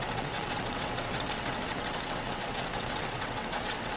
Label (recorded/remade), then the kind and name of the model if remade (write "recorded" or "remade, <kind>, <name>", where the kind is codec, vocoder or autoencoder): remade, vocoder, WaveNeXt